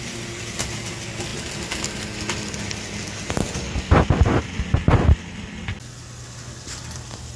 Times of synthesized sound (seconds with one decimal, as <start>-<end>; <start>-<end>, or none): none